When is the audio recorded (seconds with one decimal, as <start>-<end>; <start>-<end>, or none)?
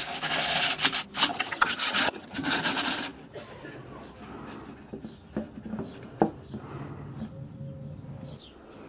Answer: 0.0-1.3; 2.6-8.9